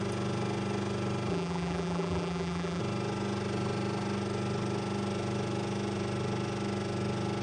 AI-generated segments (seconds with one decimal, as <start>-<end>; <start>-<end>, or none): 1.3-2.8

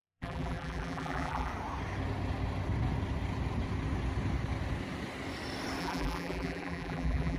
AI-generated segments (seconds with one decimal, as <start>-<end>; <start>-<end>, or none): 0.0-1.5; 5.8-7.4

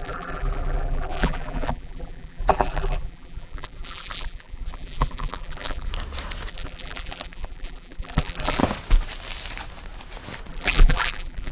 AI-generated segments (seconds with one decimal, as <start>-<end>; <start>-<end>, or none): 0.0-5.9; 6.5-8.6; 10.5-11.5

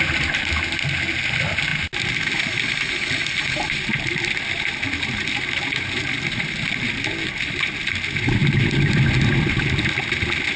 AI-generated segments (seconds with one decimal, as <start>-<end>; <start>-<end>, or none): none

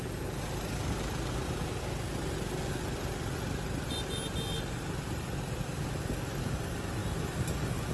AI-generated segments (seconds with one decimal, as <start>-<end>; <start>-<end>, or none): none

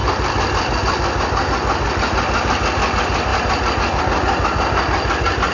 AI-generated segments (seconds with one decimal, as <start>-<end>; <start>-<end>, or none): 0.0-0.8